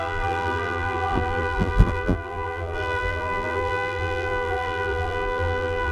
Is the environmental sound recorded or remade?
remade